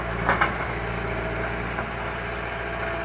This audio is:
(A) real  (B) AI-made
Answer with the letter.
A